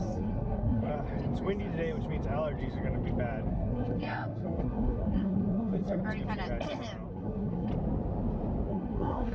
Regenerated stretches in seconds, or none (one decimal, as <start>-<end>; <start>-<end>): 0.0-0.9; 3.5-6.0; 7.1-7.7; 8.7-9.3